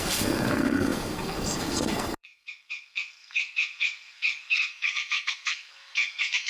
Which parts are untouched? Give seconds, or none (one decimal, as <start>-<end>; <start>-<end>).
none